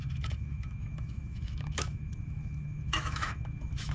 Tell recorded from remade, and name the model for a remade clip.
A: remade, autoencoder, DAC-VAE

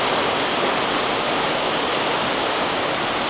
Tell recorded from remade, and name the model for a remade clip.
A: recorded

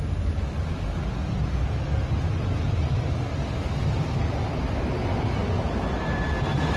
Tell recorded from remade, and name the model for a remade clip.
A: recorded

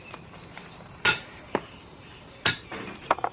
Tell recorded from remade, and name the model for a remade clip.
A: remade, vocoder, BigVGAN v2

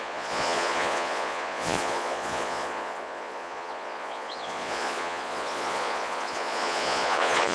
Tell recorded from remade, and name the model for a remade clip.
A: remade, vocoder, Vocos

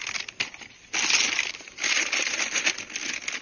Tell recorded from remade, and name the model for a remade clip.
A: recorded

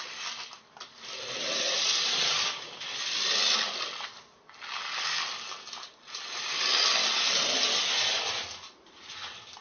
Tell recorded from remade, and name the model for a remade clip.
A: recorded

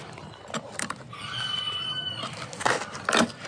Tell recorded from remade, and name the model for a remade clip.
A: recorded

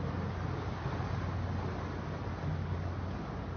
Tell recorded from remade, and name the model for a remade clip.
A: recorded